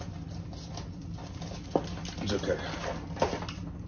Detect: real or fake real